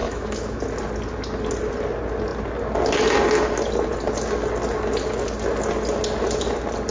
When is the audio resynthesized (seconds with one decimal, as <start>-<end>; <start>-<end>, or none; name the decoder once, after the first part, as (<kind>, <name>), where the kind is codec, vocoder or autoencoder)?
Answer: 0.0-0.6 (autoencoder, DAC-VAE)